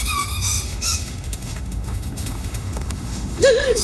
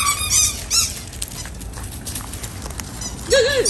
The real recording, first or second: second